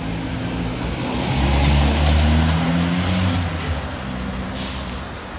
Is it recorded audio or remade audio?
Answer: recorded